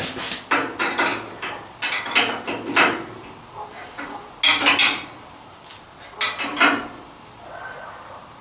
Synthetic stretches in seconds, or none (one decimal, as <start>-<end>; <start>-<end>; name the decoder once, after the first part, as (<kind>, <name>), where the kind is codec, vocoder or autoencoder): none